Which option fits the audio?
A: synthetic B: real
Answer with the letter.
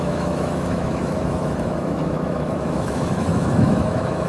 A